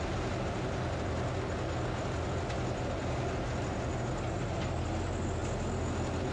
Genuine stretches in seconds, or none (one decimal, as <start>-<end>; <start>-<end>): 0.0-6.3